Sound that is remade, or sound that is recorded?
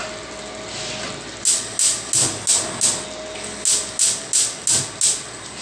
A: recorded